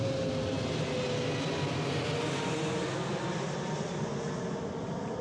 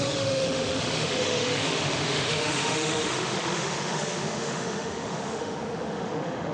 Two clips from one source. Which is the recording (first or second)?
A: first